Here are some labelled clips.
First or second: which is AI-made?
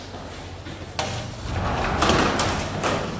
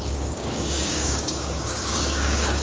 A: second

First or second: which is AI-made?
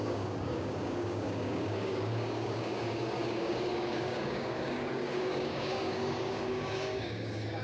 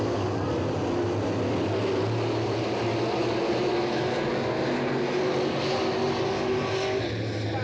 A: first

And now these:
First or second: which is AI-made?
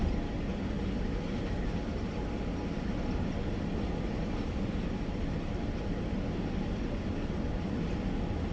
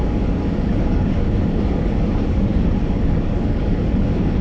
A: second